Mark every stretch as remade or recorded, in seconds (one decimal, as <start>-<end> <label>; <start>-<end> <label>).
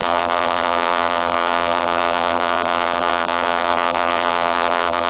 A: 0.0-5.1 remade